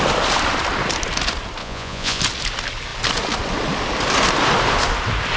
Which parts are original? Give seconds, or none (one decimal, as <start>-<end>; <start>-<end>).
0.0-1.6; 2.2-5.4